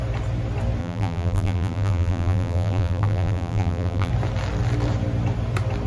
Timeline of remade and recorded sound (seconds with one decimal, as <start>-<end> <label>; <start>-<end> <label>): 0.0-0.8 recorded; 0.8-4.1 remade; 4.1-5.9 recorded